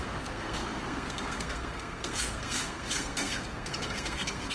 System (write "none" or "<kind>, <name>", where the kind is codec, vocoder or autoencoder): codec, SNAC